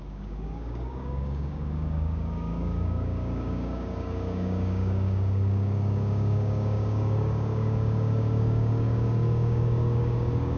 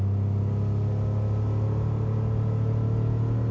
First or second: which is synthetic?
first